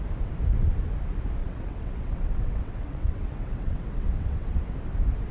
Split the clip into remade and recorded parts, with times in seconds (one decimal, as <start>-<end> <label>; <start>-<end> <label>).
0.0-1.4 recorded; 1.4-4.6 remade; 4.6-5.3 recorded